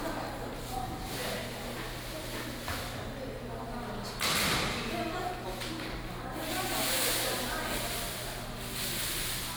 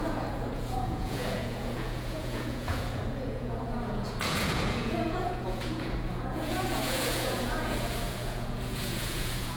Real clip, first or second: first